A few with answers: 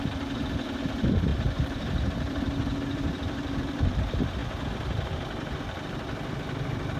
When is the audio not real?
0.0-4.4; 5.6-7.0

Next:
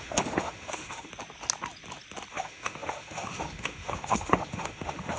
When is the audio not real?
0.0-1.1; 2.3-5.2

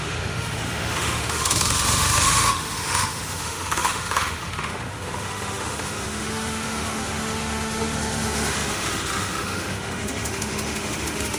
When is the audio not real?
0.0-11.4

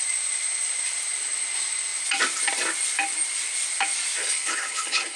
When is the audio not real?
4.2-5.2

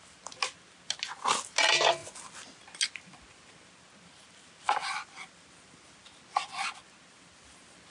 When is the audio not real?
none

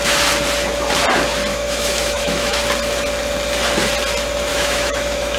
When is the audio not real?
1.5-2.6; 4.5-5.4

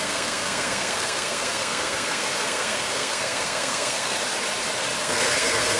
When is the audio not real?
0.0-4.2; 5.0-5.8